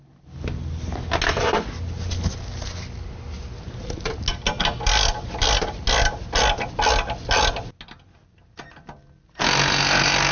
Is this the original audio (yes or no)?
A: yes